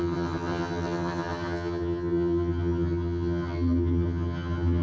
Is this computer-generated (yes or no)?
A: yes